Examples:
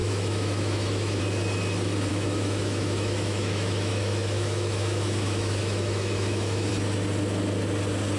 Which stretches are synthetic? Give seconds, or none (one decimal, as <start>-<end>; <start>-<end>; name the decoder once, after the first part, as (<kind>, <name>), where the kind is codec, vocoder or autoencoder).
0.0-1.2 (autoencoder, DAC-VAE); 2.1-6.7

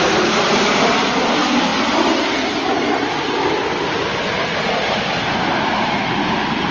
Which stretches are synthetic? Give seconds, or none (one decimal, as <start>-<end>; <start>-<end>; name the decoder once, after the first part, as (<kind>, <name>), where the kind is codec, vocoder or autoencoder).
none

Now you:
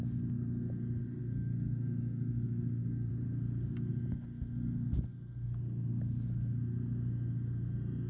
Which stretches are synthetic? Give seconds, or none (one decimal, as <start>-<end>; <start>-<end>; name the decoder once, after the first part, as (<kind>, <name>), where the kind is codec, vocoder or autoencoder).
1.0-3.1 (codec, SNAC)

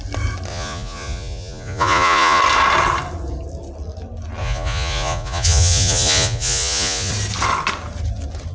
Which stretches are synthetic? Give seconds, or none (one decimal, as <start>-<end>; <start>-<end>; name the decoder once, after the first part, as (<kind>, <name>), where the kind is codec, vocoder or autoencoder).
0.5-2.4 (vocoder, Vocos); 4.4-7.1

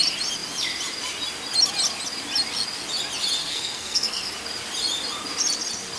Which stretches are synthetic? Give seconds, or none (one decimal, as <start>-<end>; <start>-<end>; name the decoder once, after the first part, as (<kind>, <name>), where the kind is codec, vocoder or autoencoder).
3.4-4.3 (codec, SNAC)

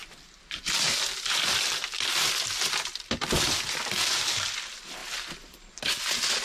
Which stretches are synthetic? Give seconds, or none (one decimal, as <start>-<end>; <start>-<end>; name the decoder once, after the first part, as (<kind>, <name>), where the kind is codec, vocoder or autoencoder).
0.0-3.8 (vocoder, BigVGAN v2); 5.0-5.7